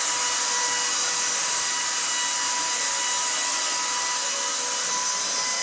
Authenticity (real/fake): real